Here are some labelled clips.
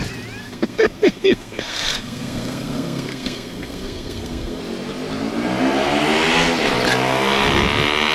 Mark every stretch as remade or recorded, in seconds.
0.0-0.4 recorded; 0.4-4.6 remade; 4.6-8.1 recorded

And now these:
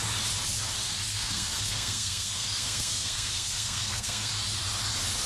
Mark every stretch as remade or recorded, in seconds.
0.0-1.1 recorded; 1.1-4.3 remade; 4.3-5.3 recorded

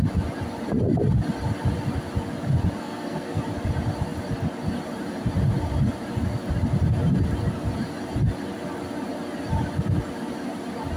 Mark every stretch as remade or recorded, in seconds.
0.0-2.8 recorded; 2.8-3.4 remade; 3.4-11.0 recorded

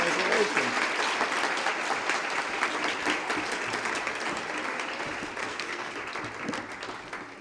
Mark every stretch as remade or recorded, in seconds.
0.0-5.4 recorded; 5.4-5.9 remade; 5.9-7.4 recorded

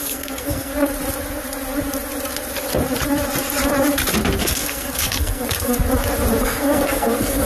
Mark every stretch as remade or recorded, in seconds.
0.0-0.7 remade; 0.7-4.4 recorded; 4.4-5.8 remade; 5.8-6.4 recorded; 6.4-7.5 remade

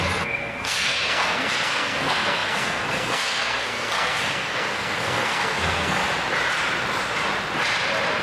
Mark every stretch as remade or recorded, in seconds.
0.0-6.0 remade; 6.0-8.2 recorded

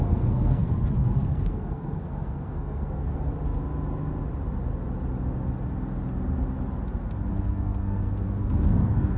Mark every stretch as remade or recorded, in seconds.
0.0-3.3 remade; 3.3-7.3 recorded; 7.3-9.2 remade

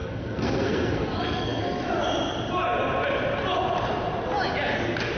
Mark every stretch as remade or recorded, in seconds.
0.0-1.6 remade; 1.6-5.2 recorded